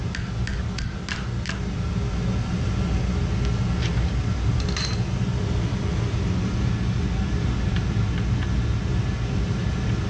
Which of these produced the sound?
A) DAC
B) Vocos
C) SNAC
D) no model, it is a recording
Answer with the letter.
D